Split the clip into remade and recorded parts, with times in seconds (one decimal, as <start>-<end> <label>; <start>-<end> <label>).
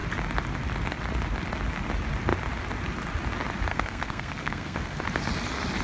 0.0-3.7 recorded; 3.7-5.0 remade; 5.0-5.8 recorded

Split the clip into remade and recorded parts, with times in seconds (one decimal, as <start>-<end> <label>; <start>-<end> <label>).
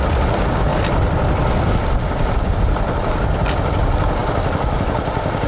0.0-5.5 recorded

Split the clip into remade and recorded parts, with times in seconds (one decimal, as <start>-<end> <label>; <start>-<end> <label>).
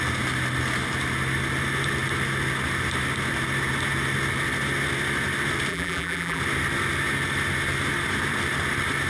0.0-5.7 recorded; 5.7-6.4 remade; 6.4-9.1 recorded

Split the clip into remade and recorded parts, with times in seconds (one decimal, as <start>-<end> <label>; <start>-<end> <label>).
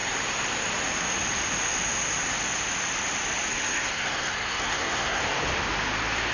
0.0-3.5 recorded; 3.5-5.2 remade; 5.2-6.3 recorded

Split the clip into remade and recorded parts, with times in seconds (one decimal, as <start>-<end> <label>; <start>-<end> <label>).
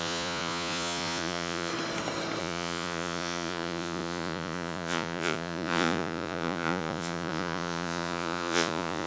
0.0-1.7 remade; 1.7-2.4 recorded; 2.4-9.1 remade